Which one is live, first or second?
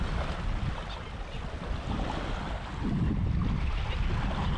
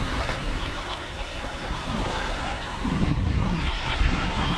first